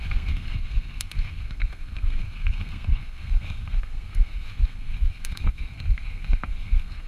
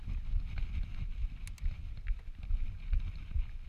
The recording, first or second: second